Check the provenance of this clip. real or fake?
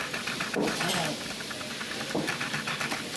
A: real